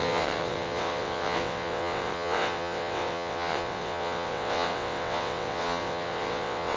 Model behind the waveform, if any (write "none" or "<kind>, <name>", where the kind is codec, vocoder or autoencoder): vocoder, WaveNeXt